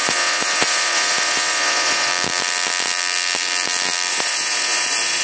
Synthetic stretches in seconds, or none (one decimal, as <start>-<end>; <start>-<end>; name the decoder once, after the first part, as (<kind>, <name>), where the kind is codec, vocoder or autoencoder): 0.0-2.1 (vocoder, Vocos); 4.1-5.2